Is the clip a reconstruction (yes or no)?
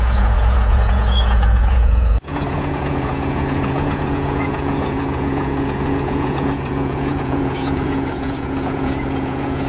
yes